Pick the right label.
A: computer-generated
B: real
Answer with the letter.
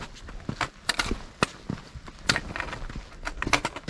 B